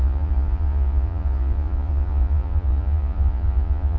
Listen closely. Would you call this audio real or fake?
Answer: fake